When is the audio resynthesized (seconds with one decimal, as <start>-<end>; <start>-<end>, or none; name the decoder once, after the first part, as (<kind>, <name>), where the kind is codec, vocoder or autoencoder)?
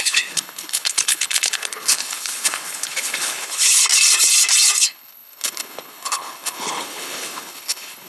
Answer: 0.0-3.8 (codec, HILCodec); 4.8-8.1